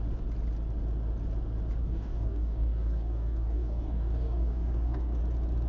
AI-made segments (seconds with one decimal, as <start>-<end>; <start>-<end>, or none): 1.8-5.2